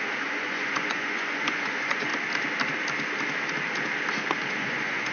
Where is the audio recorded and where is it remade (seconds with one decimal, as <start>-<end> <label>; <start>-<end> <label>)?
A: 0.0-2.1 remade; 2.1-4.5 recorded; 4.5-5.1 remade